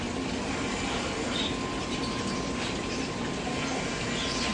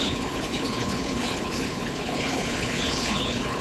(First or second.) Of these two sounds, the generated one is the second